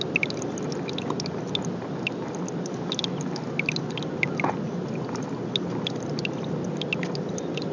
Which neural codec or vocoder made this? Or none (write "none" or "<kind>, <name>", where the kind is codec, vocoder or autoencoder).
none